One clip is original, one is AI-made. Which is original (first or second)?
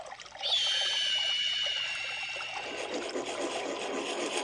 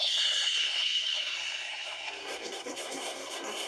first